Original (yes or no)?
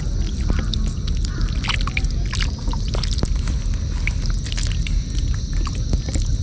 yes